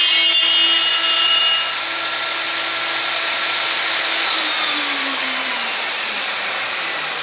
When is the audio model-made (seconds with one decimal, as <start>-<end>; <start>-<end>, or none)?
0.9-1.4; 4.3-7.2

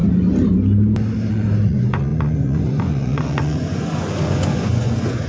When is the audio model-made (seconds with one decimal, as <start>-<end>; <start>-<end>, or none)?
1.3-5.3

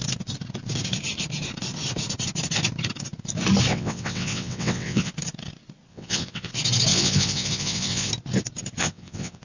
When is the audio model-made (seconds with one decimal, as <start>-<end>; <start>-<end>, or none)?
3.7-5.1; 5.9-6.5; 6.9-8.1; 8.8-9.4

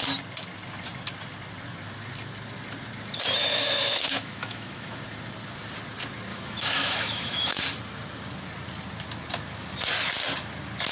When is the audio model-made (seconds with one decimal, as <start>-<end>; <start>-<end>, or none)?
3.4-5.0; 6.3-7.6

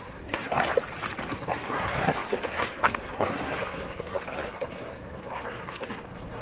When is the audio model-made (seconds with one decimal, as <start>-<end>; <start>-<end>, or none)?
0.0-0.7; 1.3-6.4